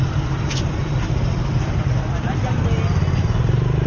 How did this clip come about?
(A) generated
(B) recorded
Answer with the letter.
B